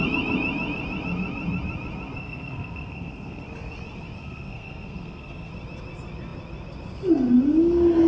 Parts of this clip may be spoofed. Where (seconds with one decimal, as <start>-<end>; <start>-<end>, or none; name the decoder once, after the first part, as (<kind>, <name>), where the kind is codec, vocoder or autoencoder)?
2.2-3.4 (codec, SNAC); 4.2-5.5

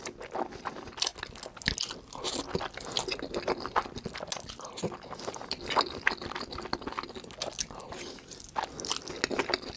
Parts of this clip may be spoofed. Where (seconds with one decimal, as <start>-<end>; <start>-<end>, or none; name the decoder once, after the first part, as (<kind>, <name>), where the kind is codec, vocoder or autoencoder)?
none